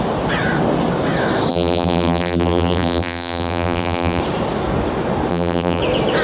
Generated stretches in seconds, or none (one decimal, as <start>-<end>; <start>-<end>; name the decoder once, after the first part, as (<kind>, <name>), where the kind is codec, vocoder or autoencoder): 1.5-4.2 (vocoder, BigVGAN v2); 5.3-5.8

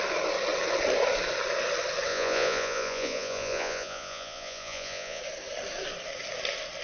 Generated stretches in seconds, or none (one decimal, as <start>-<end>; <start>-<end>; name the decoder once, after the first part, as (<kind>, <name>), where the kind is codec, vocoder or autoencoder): 2.1-5.2 (vocoder, Vocos)

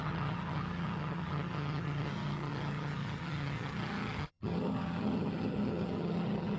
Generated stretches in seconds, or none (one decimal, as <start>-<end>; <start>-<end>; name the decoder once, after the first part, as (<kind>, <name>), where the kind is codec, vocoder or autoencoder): 0.0-6.6 (vocoder, HiFi-GAN)